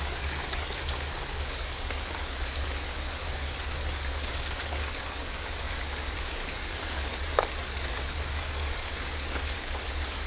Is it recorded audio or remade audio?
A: remade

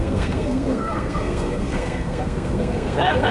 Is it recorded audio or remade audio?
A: remade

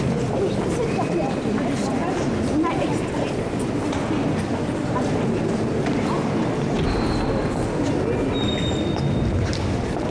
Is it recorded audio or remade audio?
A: recorded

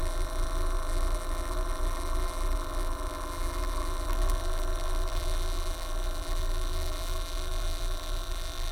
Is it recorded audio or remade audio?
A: remade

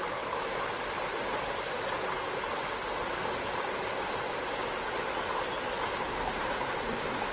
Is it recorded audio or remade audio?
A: recorded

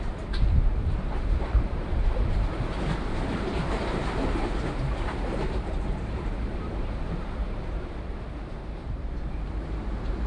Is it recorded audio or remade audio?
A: remade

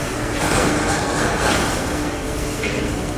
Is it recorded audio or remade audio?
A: remade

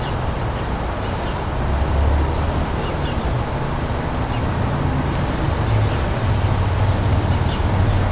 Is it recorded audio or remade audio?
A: recorded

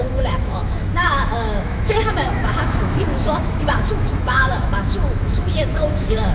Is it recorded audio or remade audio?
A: remade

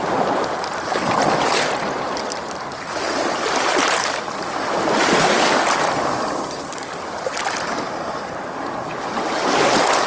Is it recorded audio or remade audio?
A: recorded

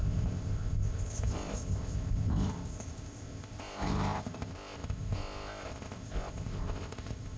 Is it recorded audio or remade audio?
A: remade